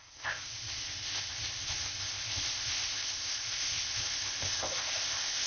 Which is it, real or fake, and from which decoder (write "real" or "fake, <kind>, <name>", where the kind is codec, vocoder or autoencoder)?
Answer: fake, codec, ZipCodec